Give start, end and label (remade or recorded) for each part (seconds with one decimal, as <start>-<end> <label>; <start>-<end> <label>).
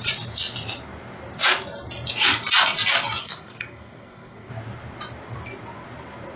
0.0-3.2 recorded; 3.2-4.5 remade; 4.5-6.4 recorded